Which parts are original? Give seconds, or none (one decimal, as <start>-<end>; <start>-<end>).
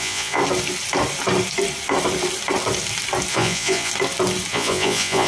0.4-3.3; 3.9-4.5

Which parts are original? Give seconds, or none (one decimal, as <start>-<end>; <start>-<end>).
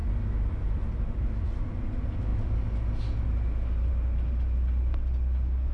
1.0-5.7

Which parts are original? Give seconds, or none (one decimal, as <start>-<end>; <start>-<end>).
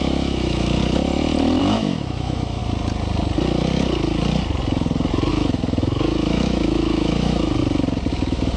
0.8-1.6; 2.6-5.3; 7.6-8.1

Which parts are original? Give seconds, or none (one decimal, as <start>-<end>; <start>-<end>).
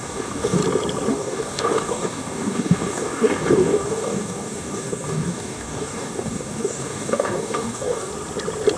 0.6-1.1; 8.1-8.8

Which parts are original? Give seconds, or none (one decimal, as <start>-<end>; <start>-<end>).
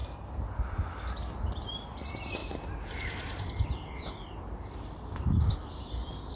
0.0-2.4